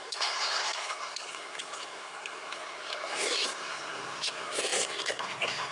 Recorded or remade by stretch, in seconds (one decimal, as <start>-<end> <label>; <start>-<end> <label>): 0.0-5.7 remade